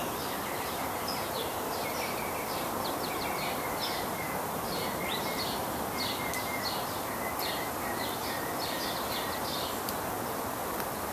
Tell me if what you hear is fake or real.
real